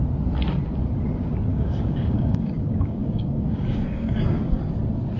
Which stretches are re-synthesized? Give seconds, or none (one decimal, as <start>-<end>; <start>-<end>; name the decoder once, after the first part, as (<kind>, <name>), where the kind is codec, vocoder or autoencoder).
1.5-4.6 (codec, DAC)

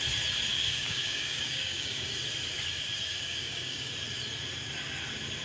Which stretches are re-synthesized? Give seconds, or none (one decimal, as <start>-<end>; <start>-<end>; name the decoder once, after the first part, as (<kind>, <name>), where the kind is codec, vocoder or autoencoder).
0.5-2.1 (codec, DAC); 3.1-3.9

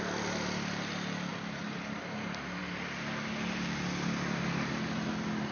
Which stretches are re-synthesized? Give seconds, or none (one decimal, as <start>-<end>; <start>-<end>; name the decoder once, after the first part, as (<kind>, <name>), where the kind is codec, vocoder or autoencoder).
none

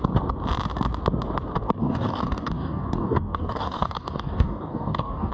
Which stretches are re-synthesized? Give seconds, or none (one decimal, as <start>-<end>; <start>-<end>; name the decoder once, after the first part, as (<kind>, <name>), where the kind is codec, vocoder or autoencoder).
1.8-5.3 (codec, DAC)

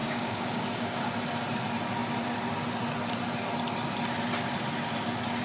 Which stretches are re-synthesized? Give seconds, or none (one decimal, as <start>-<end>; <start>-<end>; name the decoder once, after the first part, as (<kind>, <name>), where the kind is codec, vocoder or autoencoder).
0.0-1.1 (codec, DAC)

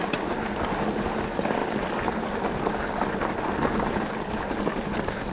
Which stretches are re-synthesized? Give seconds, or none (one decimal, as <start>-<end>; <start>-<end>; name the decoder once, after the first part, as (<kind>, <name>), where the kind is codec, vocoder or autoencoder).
none

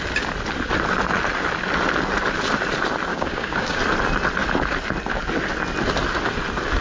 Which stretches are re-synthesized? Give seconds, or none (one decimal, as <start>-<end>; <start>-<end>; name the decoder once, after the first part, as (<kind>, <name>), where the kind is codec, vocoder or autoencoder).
3.1-3.8 (codec, DAC)

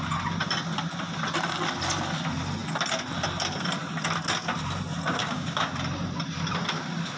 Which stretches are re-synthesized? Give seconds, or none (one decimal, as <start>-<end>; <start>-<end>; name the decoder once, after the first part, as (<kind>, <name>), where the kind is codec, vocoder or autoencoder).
5.2-5.7 (codec, DAC)